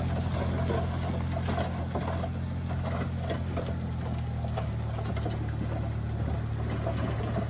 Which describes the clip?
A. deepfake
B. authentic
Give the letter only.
B